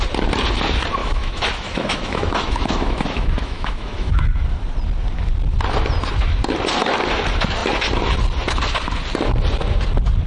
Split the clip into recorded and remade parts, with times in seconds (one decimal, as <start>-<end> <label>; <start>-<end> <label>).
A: 0.0-1.0 recorded; 1.0-4.2 remade; 4.2-10.3 recorded